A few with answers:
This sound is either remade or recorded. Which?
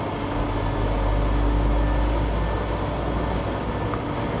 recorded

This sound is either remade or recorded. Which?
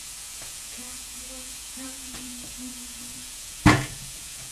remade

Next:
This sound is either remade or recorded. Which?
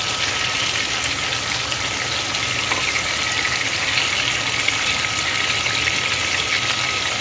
recorded